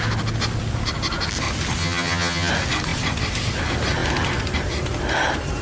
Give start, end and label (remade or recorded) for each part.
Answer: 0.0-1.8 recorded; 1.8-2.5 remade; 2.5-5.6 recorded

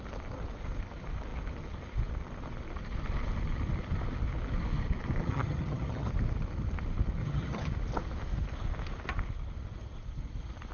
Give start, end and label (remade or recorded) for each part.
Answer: 0.0-5.2 recorded; 5.2-6.1 remade; 6.1-7.2 recorded; 7.2-7.7 remade; 7.7-10.7 recorded

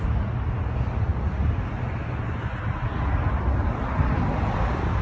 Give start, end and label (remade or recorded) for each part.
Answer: 0.0-5.0 recorded